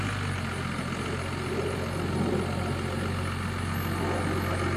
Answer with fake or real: real